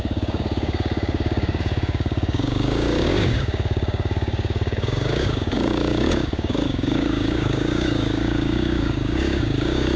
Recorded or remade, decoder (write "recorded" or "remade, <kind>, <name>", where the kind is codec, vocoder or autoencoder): remade, codec, DAC